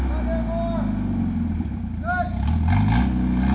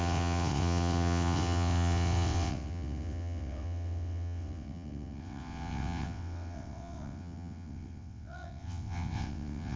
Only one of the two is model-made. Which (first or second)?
second